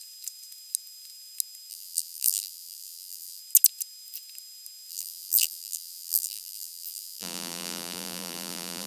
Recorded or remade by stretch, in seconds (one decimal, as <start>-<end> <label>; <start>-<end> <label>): 0.0-1.7 recorded; 1.7-3.4 remade; 3.4-4.9 recorded; 4.9-8.9 remade